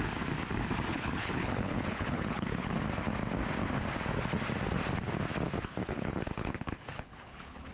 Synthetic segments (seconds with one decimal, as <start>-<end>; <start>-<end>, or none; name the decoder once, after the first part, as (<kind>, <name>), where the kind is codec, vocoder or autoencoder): 0.9-2.7 (codec, HILCodec); 5.8-7.7

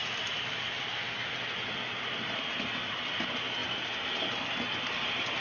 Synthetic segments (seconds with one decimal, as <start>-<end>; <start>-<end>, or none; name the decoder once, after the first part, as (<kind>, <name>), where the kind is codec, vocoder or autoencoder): 0.0-2.4 (vocoder, BigVGAN v2); 3.6-4.5

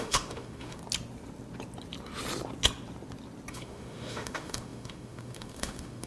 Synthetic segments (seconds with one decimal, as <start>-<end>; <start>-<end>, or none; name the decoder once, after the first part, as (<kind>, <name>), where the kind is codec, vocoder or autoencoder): 0.0-0.8 (autoencoder, DAC-VAE); 3.5-6.1